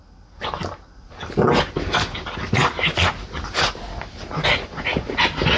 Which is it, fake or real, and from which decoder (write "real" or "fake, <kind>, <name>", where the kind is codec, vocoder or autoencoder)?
real